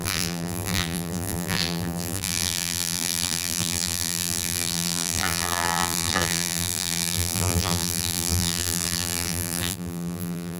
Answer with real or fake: fake